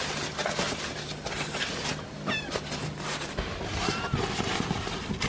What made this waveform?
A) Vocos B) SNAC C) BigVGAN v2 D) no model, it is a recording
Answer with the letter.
D